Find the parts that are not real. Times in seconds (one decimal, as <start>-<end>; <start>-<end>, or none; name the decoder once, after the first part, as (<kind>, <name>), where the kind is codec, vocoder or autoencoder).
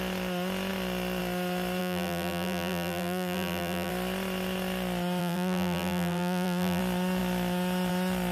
1.8-3.9 (vocoder, BigVGAN v2); 5.2-6.8